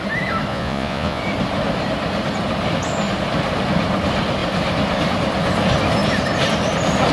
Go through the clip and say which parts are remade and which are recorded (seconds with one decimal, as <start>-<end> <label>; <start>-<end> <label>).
0.0-0.5 recorded; 0.5-1.2 remade; 1.2-7.1 recorded